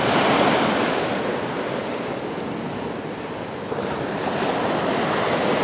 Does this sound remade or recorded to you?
recorded